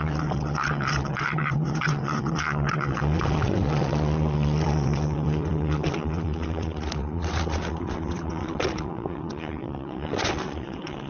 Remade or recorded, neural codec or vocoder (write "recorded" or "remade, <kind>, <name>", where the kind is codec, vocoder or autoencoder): remade, vocoder, WaveNeXt